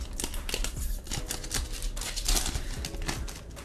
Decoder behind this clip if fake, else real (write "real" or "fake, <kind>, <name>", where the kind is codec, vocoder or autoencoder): real